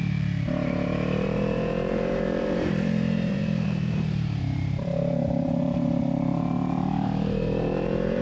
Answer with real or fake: fake